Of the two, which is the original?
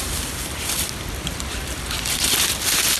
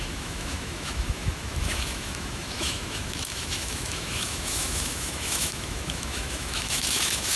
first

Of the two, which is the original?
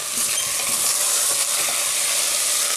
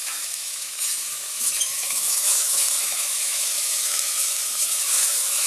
first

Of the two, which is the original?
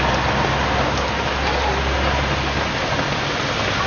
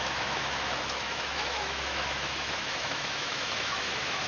first